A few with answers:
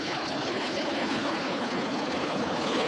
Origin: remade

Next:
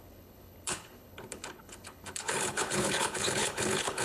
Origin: remade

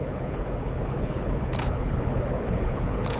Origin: remade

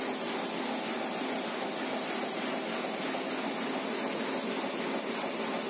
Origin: recorded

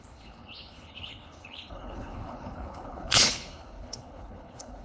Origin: remade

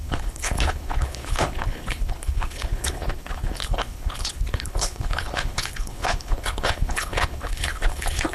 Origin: remade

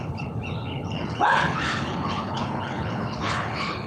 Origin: remade